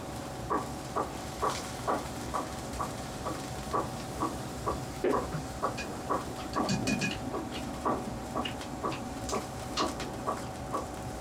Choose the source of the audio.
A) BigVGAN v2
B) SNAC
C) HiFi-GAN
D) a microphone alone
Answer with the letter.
A